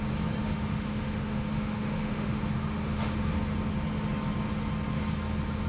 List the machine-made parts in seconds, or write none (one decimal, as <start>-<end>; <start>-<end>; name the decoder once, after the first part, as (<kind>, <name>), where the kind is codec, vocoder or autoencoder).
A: 0.4-3.2 (autoencoder, DAC-VAE)